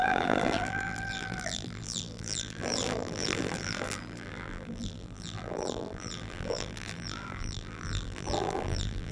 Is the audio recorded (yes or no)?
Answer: no